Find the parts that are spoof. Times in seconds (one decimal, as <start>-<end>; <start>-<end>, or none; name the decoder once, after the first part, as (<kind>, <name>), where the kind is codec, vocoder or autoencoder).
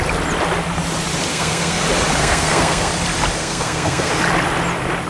1.3-1.8 (codec, SNAC); 2.2-2.9; 3.4-4.1